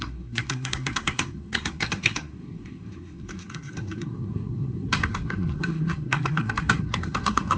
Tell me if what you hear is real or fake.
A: fake